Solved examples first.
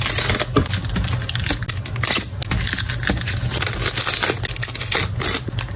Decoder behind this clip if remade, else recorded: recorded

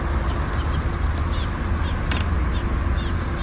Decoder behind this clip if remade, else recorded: recorded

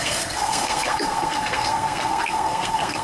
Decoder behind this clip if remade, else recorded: remade, codec, SNAC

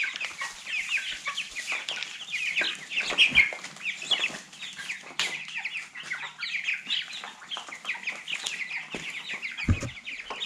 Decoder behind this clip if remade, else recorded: recorded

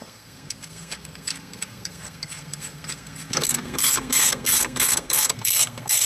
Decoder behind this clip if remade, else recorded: remade, codec, SNAC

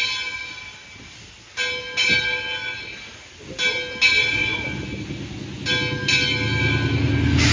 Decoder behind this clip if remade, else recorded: recorded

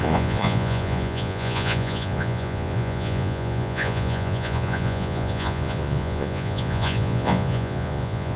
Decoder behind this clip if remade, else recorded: remade, vocoder, Vocos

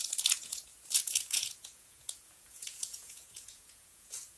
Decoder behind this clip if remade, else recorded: remade, vocoder, Vocos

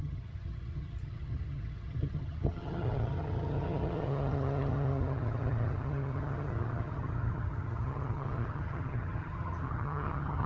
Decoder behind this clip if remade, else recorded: remade, vocoder, HiFi-GAN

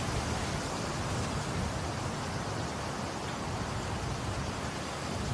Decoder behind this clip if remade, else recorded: recorded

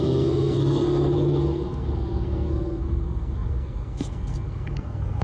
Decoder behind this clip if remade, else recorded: remade, codec, SNAC